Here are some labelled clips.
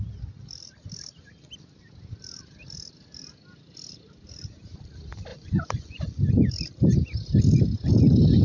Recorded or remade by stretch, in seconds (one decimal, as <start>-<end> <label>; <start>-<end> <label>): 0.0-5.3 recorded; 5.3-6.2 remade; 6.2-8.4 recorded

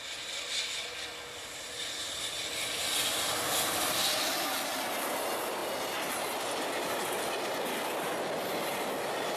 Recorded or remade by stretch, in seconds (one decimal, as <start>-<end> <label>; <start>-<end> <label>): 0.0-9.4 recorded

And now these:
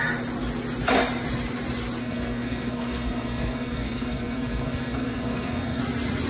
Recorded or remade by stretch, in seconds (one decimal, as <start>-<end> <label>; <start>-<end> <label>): 0.0-2.0 recorded; 2.0-5.8 remade; 5.8-6.3 recorded